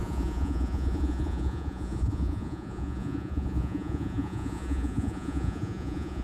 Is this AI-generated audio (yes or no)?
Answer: yes